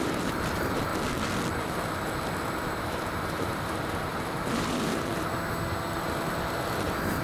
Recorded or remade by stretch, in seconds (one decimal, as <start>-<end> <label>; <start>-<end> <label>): 0.0-0.9 remade; 0.9-2.8 recorded; 2.8-5.3 remade; 5.3-7.2 recorded

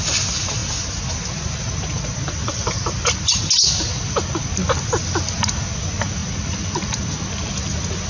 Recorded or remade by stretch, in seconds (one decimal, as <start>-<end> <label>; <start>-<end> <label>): 0.0-8.1 recorded